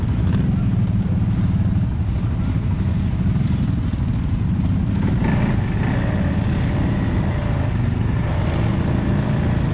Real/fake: real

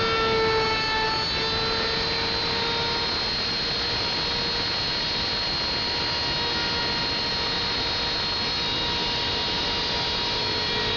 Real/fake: real